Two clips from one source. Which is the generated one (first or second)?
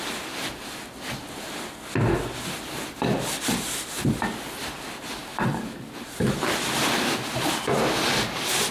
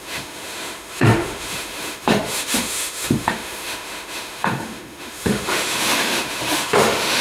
second